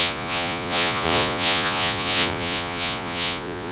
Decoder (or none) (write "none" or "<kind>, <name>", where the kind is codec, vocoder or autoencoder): vocoder, Vocos